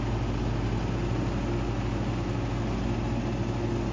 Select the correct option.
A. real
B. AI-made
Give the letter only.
A